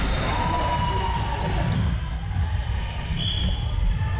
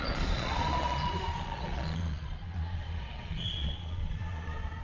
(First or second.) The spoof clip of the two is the second